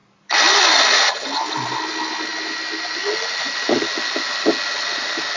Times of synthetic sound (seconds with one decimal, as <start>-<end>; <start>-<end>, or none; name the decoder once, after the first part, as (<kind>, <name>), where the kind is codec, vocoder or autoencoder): none